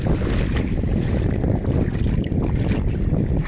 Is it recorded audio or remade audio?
recorded